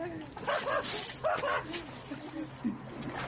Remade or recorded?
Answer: recorded